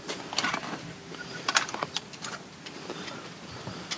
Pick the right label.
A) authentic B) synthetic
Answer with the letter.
B